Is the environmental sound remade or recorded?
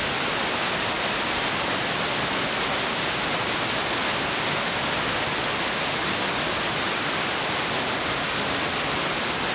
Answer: recorded